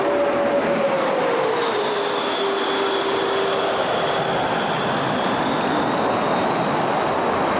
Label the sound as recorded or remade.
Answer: recorded